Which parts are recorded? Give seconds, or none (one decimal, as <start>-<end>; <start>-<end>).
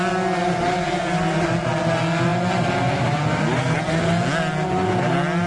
0.0-5.5